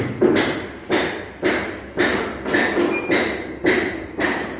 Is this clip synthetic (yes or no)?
no